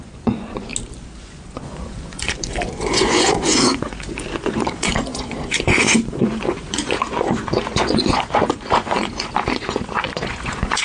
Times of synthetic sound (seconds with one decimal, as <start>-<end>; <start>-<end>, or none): 0.0-0.7; 1.2-10.8